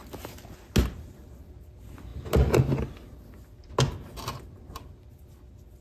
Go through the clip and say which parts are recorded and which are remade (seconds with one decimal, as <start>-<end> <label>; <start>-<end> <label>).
0.0-5.8 recorded